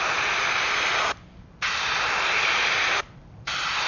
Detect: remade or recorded recorded